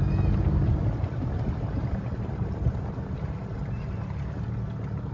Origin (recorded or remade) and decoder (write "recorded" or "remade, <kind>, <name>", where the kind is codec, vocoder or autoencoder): recorded